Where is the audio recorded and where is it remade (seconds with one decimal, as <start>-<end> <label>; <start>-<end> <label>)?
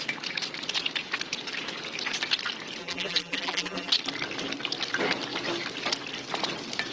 0.0-2.8 recorded; 2.8-3.9 remade; 3.9-6.9 recorded